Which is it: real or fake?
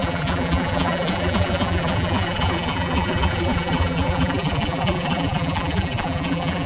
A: fake